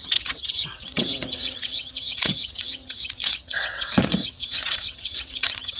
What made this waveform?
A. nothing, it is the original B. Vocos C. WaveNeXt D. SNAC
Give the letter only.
C